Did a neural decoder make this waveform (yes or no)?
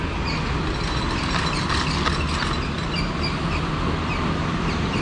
no